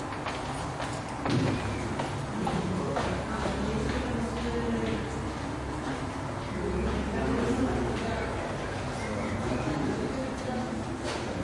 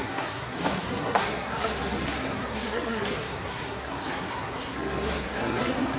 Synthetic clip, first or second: second